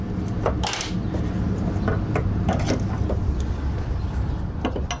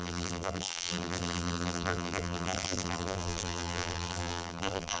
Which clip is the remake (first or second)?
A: second